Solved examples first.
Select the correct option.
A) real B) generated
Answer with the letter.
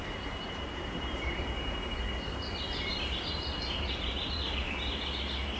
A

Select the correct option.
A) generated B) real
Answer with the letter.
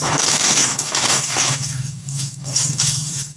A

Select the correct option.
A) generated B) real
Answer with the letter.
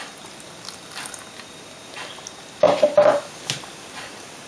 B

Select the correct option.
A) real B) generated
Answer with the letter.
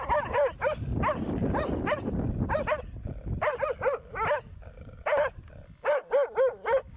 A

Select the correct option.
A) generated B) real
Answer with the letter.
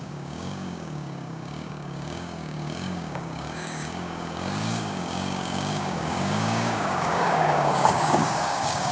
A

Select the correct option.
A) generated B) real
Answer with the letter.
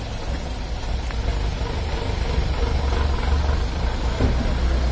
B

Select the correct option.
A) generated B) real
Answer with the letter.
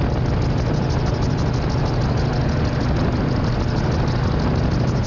B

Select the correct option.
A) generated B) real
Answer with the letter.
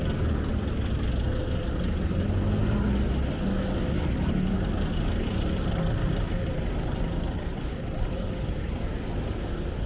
B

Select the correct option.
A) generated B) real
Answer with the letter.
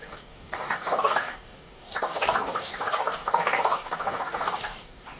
A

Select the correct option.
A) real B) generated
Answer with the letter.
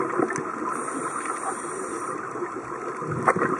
A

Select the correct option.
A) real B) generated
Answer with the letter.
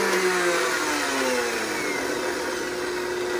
A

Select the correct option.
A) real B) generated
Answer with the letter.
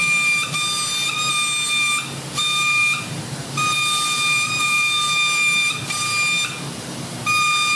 A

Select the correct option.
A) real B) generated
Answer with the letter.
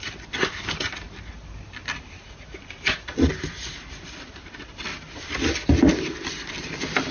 A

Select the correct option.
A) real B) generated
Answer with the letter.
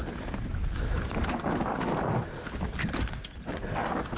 A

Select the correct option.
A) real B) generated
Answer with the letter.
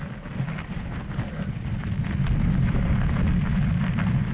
A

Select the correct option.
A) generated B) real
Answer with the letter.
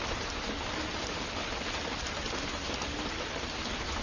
B